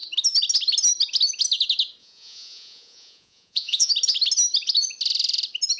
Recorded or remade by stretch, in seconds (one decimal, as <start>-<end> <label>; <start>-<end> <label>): 0.0-2.0 recorded; 2.0-3.9 remade; 3.9-5.8 recorded